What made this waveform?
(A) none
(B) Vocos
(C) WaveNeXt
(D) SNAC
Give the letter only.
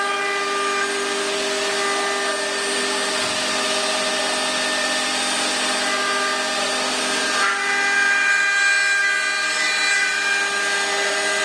A